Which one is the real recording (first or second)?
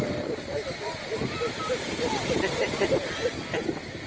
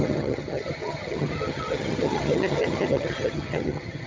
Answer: first